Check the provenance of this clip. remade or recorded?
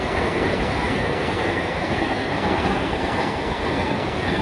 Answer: remade